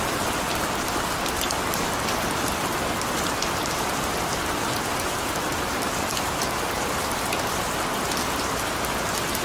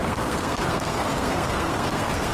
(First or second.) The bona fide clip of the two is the first